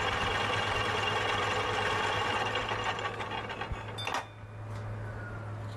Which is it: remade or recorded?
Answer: recorded